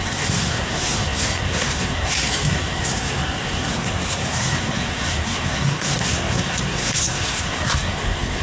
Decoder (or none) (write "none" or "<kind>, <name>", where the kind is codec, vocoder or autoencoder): codec, SNAC